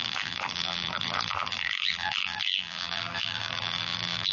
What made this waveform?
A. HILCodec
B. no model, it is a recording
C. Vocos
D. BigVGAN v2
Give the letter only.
D